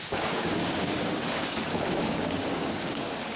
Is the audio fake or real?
fake